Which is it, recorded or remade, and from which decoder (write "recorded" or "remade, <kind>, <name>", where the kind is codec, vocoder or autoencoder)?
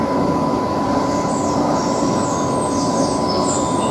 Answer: recorded